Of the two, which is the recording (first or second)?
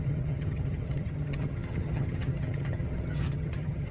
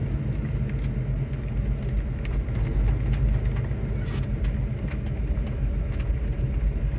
second